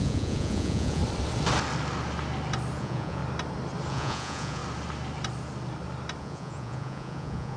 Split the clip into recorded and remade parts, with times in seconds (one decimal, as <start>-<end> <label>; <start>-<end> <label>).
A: 0.0-1.0 remade; 1.0-2.8 recorded; 2.8-3.2 remade; 3.2-3.9 recorded; 3.9-4.6 remade; 4.6-6.2 recorded; 6.2-7.6 remade